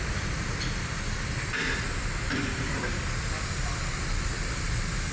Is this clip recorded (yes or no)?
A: yes